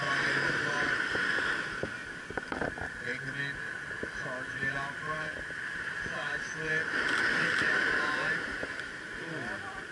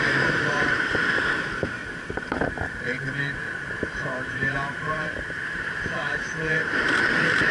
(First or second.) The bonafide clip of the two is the first